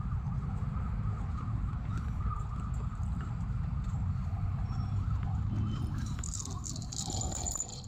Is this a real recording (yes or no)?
yes